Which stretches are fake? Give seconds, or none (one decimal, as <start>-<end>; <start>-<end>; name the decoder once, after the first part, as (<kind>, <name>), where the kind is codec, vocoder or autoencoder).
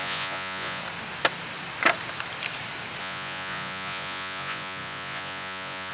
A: 0.0-0.8 (vocoder, Vocos); 3.0-5.9